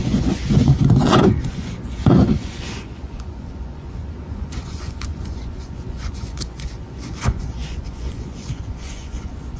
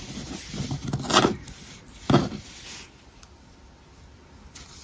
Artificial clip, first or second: first